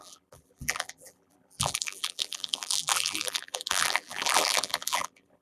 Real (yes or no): no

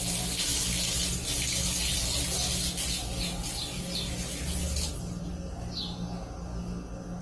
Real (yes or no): yes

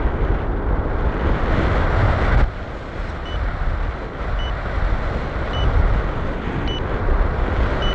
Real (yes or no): yes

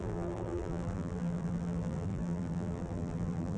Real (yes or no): no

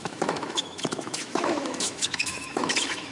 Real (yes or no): no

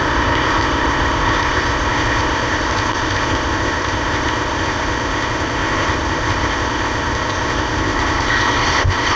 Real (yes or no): no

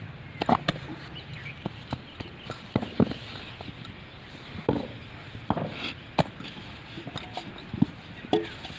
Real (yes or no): yes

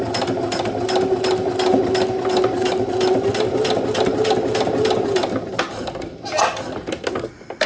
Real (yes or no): yes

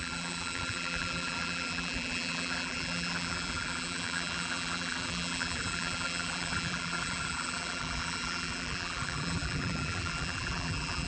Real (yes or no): no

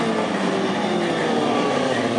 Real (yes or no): yes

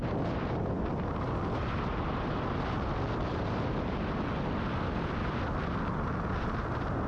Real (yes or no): yes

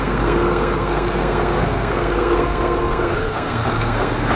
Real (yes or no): no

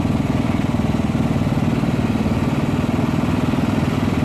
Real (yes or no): yes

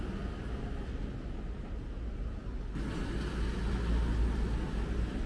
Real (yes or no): yes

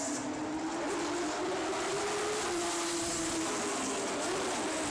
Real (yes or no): yes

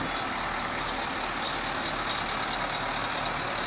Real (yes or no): yes